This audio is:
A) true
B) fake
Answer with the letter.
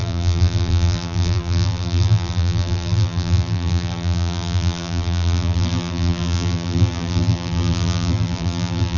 B